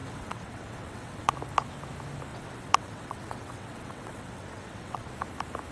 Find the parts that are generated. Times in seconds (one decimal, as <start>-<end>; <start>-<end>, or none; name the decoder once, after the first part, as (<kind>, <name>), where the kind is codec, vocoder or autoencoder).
0.0-1.3 (vocoder, WaveNeXt); 2.3-5.1